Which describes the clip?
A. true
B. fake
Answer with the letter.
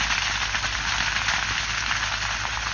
A